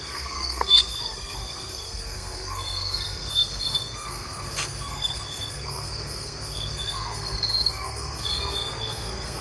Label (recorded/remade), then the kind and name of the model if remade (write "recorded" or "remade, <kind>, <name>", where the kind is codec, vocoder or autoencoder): remade, codec, SNAC